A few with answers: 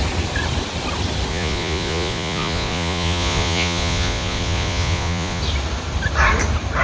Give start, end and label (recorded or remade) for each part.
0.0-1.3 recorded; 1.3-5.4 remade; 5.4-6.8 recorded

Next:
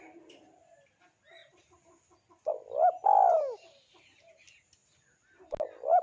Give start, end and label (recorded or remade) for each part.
0.0-6.0 recorded

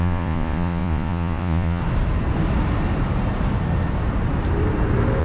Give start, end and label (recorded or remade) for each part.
0.0-1.8 remade; 1.8-5.2 recorded